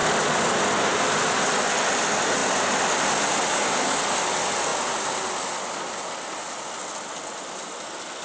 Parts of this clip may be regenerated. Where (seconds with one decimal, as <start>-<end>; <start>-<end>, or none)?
none